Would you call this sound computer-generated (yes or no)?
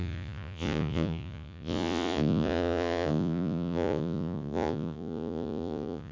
yes